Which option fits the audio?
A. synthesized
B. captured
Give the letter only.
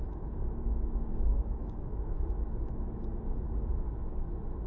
A